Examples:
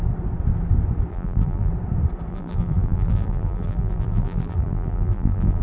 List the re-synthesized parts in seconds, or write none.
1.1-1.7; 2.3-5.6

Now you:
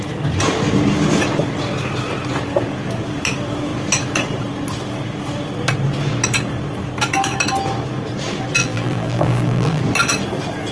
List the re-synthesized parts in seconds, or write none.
8.6-9.8

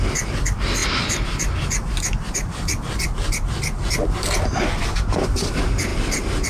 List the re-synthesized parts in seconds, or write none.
none